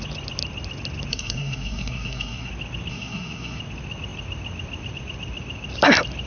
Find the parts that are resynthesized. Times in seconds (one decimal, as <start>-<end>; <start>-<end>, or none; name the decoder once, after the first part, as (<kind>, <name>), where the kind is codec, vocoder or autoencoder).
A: 1.1-2.5 (codec, SNAC); 2.9-3.6